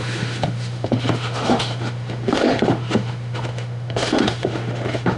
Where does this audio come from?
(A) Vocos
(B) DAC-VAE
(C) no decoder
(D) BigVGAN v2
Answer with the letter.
B